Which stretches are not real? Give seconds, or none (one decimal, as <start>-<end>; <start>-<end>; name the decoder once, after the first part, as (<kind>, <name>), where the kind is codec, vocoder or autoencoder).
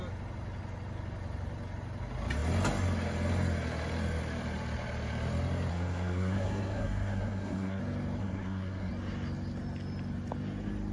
5.7-7.8 (codec, SNAC); 8.2-8.9